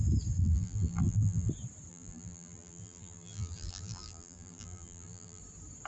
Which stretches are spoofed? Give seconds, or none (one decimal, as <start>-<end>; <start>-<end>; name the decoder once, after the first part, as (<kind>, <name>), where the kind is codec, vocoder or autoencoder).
0.4-1.5 (vocoder, BigVGAN v2); 1.9-5.4